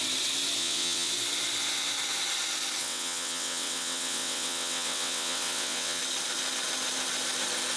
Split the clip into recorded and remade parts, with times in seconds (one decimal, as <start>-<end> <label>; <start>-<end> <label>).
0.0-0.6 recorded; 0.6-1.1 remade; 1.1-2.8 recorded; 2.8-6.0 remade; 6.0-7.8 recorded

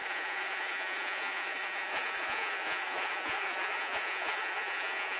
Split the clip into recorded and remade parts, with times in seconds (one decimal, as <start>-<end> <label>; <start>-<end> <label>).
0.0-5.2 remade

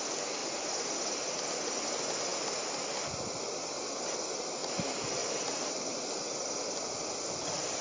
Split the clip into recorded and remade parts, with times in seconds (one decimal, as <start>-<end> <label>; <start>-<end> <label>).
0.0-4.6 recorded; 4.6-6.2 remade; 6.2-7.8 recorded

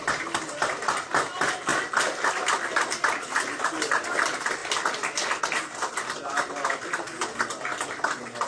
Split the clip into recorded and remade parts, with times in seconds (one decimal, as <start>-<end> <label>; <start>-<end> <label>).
0.0-8.5 recorded

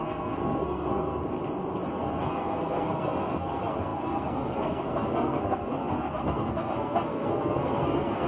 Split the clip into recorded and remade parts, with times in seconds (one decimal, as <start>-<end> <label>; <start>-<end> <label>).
0.0-1.2 remade; 1.2-1.9 recorded; 1.9-8.3 remade

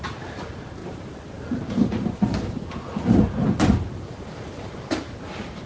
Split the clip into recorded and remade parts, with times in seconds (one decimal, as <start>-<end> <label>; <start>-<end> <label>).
0.0-2.3 remade; 2.3-3.4 recorded; 3.4-5.7 remade